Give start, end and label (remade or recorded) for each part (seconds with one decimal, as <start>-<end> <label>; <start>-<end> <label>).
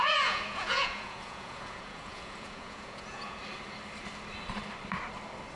0.0-3.4 remade; 3.4-5.6 recorded